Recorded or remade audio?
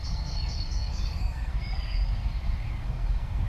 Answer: remade